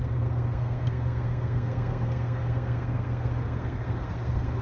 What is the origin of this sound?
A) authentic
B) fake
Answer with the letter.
B